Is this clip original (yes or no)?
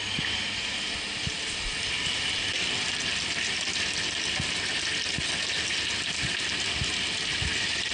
yes